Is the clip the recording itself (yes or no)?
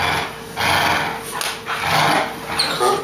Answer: yes